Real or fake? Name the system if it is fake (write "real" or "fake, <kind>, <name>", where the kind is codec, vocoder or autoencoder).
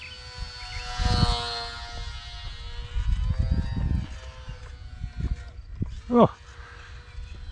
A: real